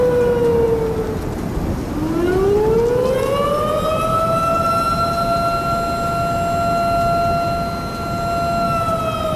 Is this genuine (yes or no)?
yes